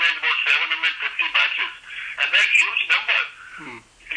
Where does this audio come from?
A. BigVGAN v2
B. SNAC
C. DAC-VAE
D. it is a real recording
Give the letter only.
A